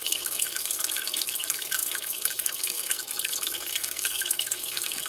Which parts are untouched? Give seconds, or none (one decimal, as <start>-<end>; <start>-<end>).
none